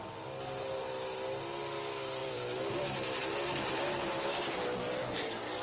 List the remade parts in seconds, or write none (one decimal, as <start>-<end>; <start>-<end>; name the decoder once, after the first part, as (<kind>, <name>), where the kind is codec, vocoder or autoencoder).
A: 2.2-3.2 (vocoder, BigVGAN v2)